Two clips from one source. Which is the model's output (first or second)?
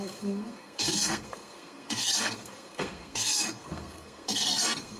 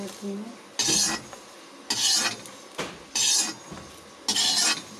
first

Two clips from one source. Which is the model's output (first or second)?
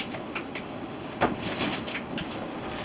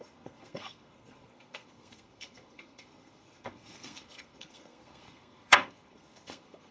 second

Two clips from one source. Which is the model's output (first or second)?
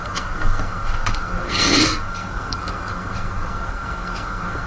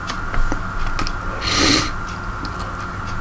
first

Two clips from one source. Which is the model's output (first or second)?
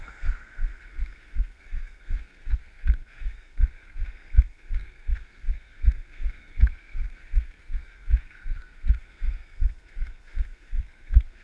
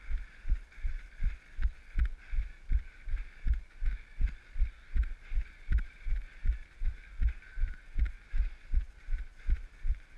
first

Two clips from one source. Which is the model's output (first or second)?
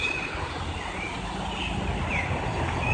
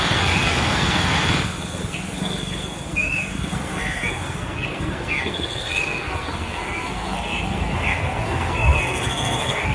second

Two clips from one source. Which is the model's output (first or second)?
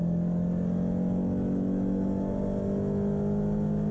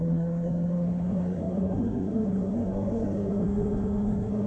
second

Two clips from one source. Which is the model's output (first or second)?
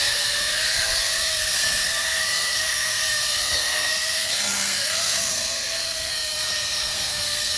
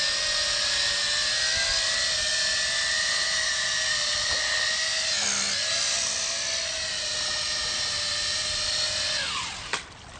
first